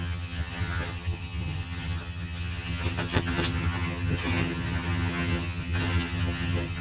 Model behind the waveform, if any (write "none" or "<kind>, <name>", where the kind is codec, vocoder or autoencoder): vocoder, HiFi-GAN